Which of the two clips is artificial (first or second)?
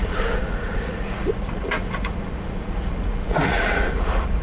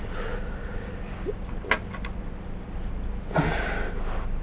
first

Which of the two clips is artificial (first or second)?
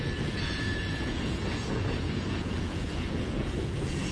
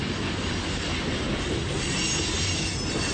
first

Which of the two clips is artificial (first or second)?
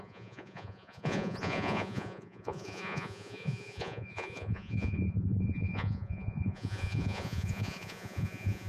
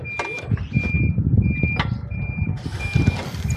first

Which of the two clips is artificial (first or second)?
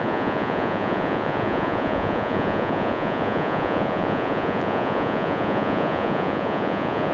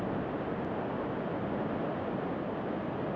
first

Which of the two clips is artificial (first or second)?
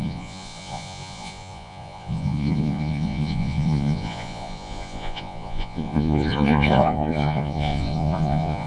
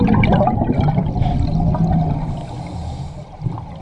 first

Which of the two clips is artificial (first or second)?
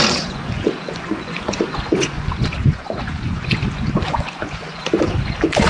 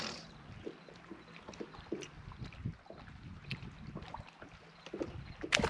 first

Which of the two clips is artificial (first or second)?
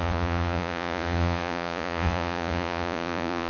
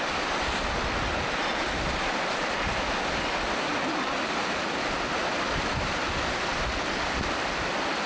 first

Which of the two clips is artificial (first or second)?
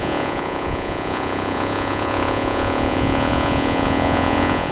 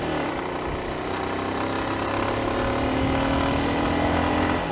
first